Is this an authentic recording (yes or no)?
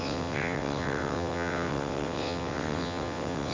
no